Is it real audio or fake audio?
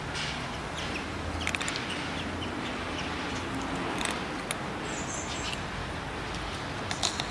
real